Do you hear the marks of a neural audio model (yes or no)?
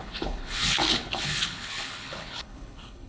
yes